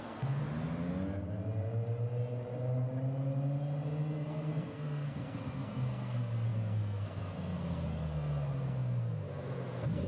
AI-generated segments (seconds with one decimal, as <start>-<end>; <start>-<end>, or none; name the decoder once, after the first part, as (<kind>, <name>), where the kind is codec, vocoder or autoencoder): 0.0-0.4 (codec, SNAC); 4.2-10.1

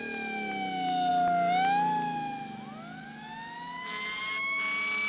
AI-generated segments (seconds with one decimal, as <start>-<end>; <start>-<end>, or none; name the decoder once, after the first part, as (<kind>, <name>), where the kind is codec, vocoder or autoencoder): none

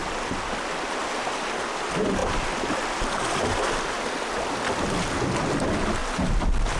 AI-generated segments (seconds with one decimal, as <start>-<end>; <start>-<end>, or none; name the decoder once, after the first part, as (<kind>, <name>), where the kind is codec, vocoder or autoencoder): none

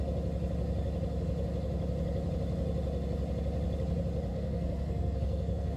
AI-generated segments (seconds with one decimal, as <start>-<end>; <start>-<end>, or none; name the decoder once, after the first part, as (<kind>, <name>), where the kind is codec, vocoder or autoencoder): 4.3-5.8 (codec, SNAC)

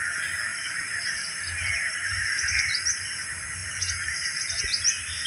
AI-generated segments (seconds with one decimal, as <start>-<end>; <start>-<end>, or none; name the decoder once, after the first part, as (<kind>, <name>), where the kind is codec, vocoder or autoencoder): 0.5-2.6 (vocoder, BigVGAN v2)

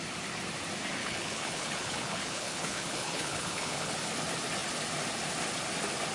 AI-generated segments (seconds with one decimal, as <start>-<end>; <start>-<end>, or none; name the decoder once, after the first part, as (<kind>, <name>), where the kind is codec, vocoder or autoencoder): 1.0-3.9 (codec, HILCodec)

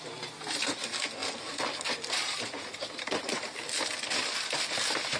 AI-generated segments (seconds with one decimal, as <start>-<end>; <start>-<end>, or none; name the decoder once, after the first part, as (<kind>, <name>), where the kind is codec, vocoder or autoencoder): 2.2-3.3 (vocoder, BigVGAN v2)

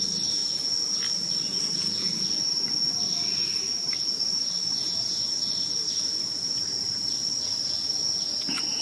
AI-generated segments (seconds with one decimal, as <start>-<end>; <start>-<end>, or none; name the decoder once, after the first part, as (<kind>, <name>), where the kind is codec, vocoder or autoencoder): 4.8-5.3 (vocoder, Vocos)